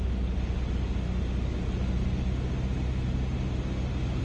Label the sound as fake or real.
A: real